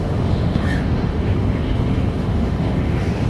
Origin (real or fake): fake